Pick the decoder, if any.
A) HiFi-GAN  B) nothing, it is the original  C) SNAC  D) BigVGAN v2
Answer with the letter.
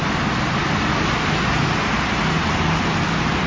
B